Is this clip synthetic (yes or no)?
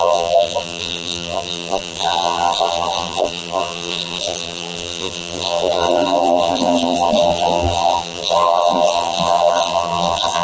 yes